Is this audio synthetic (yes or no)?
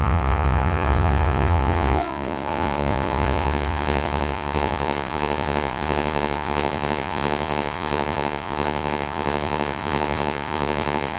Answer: yes